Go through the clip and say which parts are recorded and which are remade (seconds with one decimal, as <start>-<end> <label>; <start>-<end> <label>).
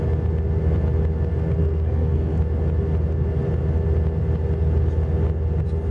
0.0-1.6 recorded; 1.6-2.4 remade; 2.4-5.9 recorded